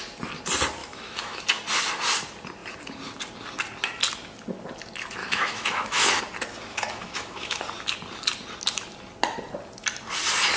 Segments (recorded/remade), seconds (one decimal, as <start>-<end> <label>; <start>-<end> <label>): 0.0-0.8 recorded; 0.8-1.4 remade; 1.4-5.2 recorded; 5.2-6.2 remade; 6.2-6.7 recorded; 6.7-7.6 remade; 7.6-10.6 recorded